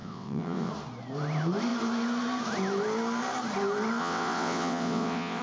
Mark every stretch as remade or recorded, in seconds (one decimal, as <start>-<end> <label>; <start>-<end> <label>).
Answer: 0.0-0.7 remade; 0.7-4.0 recorded; 4.0-5.4 remade